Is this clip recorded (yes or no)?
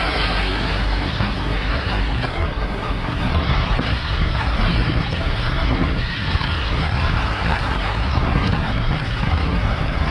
no